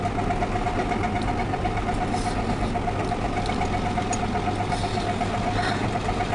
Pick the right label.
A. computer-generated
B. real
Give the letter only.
B